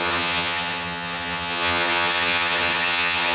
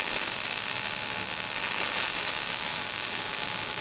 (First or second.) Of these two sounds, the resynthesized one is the first